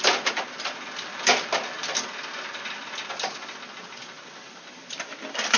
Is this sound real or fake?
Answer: real